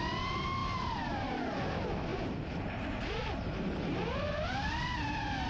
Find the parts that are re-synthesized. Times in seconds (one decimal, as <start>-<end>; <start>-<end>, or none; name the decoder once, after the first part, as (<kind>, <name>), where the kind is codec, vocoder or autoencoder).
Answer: 0.6-1.6 (vocoder, BigVGAN v2); 2.1-5.5